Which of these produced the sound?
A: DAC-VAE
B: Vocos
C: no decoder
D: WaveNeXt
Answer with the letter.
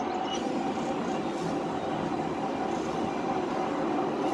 C